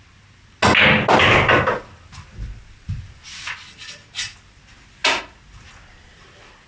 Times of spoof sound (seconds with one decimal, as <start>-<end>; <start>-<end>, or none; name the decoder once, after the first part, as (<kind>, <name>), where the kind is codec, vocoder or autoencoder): none